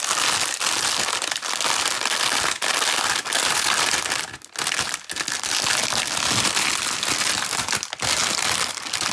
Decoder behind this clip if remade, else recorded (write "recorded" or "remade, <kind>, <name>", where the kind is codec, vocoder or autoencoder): recorded